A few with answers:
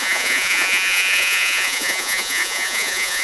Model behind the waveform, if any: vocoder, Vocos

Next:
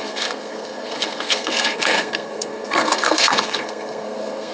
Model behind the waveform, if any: codec, SNAC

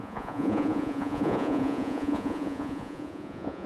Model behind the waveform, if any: vocoder, Vocos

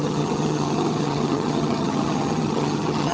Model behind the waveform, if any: vocoder, HiFi-GAN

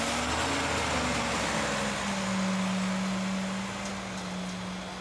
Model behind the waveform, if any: none